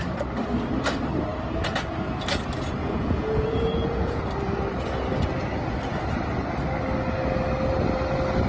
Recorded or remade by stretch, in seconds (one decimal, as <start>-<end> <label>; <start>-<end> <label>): 0.0-2.8 recorded; 2.8-4.2 remade; 4.2-8.5 recorded